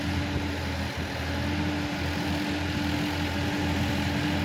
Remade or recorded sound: recorded